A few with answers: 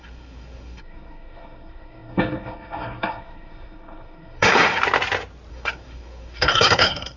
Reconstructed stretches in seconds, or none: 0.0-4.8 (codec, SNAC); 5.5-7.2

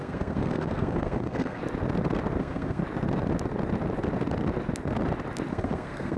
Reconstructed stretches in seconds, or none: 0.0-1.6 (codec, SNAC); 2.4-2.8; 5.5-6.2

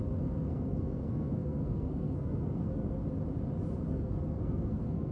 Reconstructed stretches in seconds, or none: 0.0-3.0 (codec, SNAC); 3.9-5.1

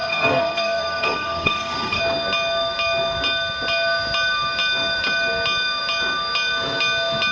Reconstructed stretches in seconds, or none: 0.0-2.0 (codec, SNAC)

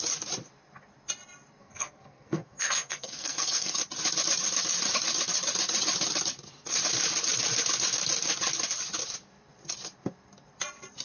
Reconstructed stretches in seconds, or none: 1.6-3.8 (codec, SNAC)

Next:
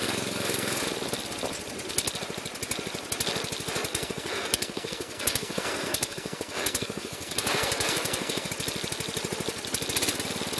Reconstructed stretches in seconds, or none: 0.0-0.8 (codec, SNAC); 3.9-8.5

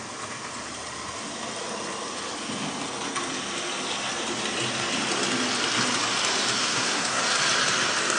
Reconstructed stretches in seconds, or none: 6.6-7.2 (codec, SNAC)

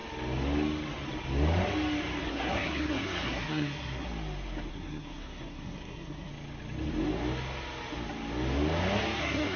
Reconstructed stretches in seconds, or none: 2.3-4.1 (codec, SNAC); 4.7-6.3; 9.2-9.6